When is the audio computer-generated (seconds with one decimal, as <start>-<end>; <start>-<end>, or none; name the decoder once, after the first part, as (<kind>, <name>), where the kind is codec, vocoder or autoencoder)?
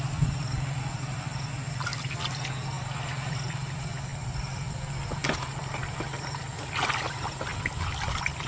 5.6-8.5 (vocoder, BigVGAN v2)